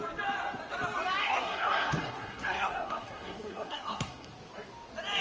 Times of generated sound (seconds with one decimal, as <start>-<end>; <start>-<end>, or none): 1.2-4.3